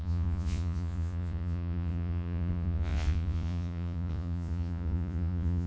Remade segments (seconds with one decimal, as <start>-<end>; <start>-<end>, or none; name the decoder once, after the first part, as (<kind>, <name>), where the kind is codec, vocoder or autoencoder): 0.0-5.7 (vocoder, Vocos)